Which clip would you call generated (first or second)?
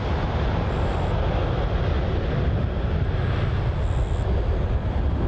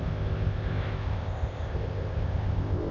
second